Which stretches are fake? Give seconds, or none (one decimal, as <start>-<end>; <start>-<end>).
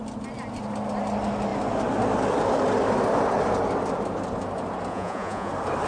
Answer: 4.9-5.5